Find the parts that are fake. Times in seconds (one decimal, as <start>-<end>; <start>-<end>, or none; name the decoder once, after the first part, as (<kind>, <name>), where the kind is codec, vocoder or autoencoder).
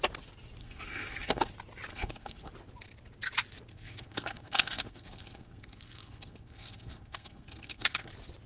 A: 0.6-1.5 (codec, SNAC); 1.9-2.5; 3.7-8.1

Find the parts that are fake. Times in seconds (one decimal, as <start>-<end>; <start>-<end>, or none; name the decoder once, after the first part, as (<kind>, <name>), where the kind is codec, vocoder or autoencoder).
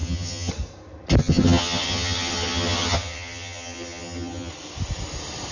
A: 0.0-0.5 (vocoder, HiFi-GAN); 1.2-4.5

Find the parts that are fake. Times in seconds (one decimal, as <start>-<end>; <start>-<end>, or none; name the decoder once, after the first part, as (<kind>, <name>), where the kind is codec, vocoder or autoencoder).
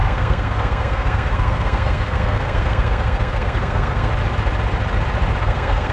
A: 0.0-4.1 (codec, SNAC); 5.4-5.9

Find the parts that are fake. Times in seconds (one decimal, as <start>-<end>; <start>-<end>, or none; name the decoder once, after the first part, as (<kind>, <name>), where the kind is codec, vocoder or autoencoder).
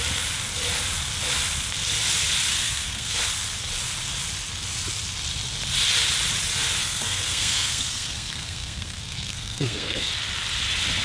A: 2.5-3.2 (codec, SNAC); 6.8-10.1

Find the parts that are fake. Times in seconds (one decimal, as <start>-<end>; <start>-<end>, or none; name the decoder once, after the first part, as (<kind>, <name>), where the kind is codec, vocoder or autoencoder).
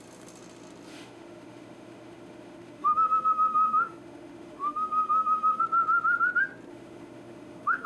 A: 0.9-5.6 (autoencoder, DAC-VAE); 6.7-7.9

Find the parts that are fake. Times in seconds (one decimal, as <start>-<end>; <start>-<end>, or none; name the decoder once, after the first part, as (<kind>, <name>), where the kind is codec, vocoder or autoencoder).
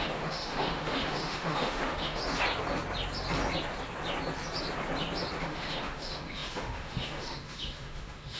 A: 0.0-2.2 (autoencoder, DAC-VAE); 5.4-8.4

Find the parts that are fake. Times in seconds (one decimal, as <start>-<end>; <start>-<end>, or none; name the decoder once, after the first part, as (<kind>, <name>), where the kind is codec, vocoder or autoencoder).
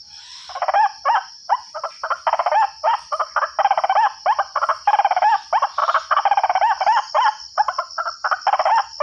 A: none